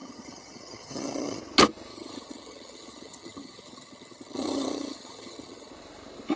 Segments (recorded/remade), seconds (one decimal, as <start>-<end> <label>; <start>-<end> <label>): 0.0-1.4 remade; 1.4-1.9 recorded; 1.9-5.7 remade; 5.7-6.4 recorded